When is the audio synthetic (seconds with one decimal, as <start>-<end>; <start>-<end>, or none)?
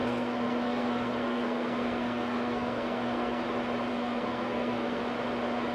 0.0-3.4; 3.9-5.0